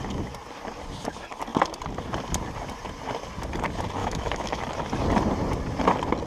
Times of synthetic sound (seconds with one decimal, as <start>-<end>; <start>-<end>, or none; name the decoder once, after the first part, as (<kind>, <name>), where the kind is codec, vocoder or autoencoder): 4.0-4.6 (autoencoder, DAC-VAE)